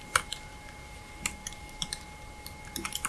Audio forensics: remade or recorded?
remade